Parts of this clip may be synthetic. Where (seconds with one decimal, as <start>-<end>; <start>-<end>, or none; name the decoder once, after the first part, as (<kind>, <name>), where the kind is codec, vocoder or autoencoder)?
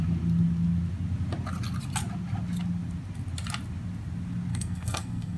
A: 4.5-5.4 (codec, SNAC)